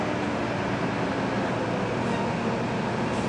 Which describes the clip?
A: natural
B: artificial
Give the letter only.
A